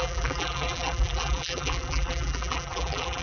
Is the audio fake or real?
fake